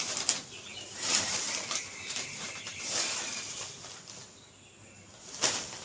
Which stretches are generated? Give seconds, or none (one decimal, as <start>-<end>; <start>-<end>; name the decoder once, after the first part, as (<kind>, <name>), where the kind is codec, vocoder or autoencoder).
0.7-3.0 (vocoder, BigVGAN v2)